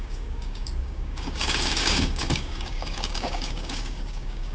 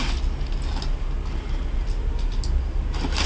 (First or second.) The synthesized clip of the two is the first